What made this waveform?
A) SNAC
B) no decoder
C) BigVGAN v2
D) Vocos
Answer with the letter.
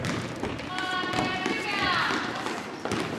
B